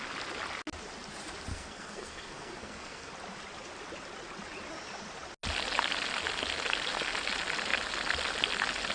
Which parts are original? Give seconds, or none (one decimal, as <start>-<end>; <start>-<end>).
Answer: 0.0-1.5; 3.1-8.9